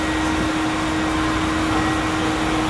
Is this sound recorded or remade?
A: recorded